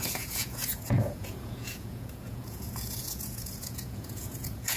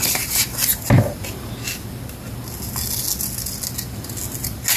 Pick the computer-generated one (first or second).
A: first